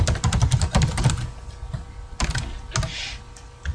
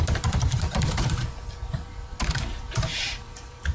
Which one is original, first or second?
first